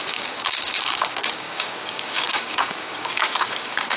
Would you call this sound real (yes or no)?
no